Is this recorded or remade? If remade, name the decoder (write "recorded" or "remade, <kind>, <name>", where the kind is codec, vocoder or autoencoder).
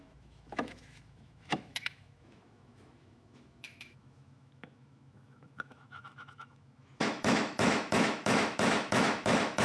remade, autoencoder, DAC-VAE